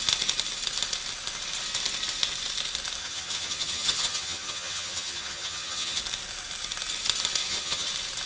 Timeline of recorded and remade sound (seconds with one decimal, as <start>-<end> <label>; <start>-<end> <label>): 0.0-3.0 recorded; 3.0-6.0 remade; 6.0-7.4 recorded; 7.4-7.9 remade; 7.9-8.3 recorded